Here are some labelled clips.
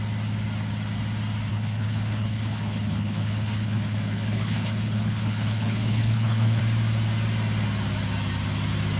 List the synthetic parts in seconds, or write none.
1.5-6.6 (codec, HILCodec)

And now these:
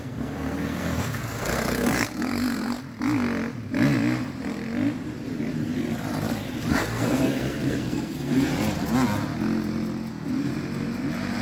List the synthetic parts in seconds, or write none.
0.0-2.8 (codec, SNAC); 6.7-8.5; 10.1-10.5

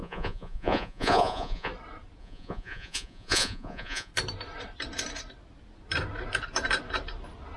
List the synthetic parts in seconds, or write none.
0.0-1.7 (vocoder, Vocos); 2.2-4.1

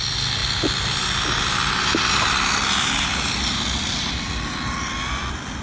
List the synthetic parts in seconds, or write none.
none

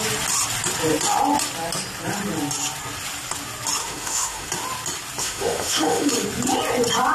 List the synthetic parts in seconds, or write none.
3.8-4.5 (autoencoder, DAC-VAE); 5.2-6.1

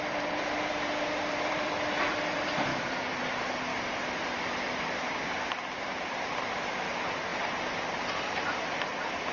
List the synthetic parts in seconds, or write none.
0.0-2.7 (vocoder, BigVGAN v2); 3.2-7.3

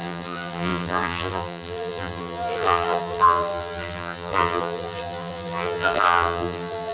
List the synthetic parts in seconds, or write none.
0.0-6.9 (vocoder, BigVGAN v2)